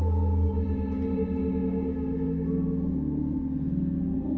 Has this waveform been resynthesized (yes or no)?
no